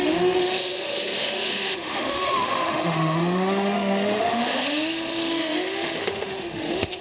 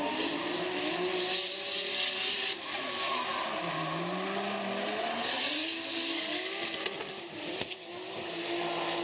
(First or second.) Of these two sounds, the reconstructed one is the first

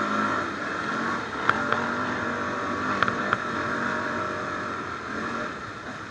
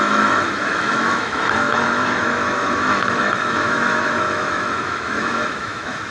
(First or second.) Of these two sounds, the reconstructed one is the second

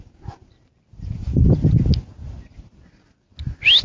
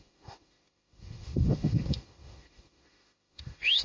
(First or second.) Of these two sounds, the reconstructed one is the second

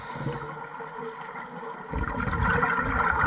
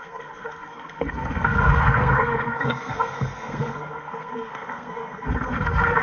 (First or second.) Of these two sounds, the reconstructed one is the second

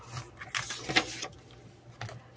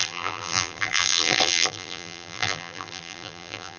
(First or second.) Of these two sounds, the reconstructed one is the second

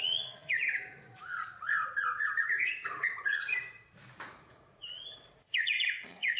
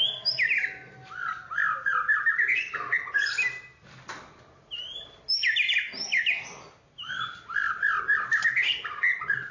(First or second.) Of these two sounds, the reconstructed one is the first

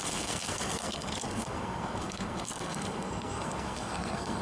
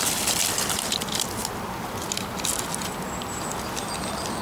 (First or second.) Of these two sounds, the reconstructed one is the first